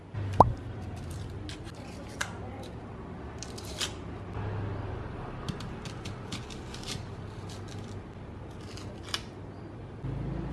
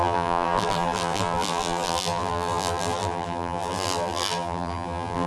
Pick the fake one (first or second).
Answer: second